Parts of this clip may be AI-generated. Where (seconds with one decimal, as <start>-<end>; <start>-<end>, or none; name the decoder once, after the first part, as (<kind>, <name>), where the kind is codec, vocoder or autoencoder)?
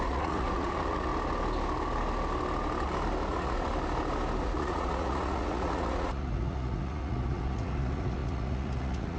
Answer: 0.0-1.1 (vocoder, Vocos); 3.3-3.7; 4.4-9.2